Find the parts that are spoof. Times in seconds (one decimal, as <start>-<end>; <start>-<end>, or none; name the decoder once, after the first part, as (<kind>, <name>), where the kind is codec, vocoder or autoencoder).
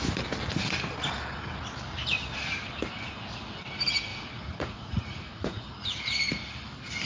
4.1-5.6 (vocoder, Vocos)